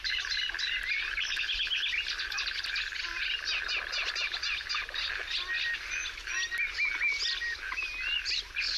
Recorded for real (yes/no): yes